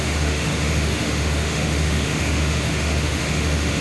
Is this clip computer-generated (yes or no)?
yes